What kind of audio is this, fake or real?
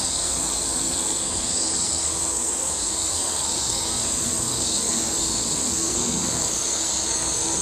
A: fake